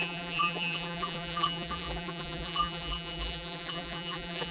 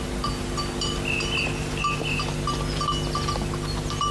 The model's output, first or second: first